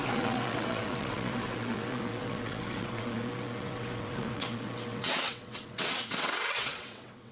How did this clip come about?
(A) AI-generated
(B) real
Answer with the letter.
A